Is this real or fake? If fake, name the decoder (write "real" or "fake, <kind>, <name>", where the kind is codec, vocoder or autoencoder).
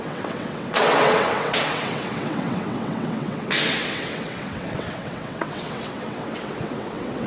fake, vocoder, WaveNeXt